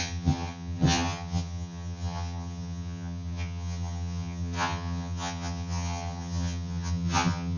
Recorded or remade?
remade